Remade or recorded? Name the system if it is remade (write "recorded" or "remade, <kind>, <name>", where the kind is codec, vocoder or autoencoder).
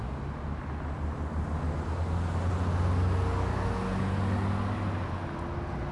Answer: recorded